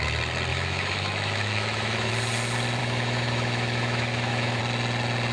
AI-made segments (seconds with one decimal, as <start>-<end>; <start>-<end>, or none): 0.5-2.1; 2.8-4.6